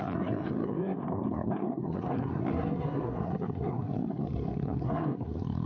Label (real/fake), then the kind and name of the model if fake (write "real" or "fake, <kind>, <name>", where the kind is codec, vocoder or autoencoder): fake, codec, SNAC